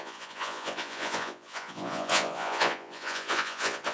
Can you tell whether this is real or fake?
fake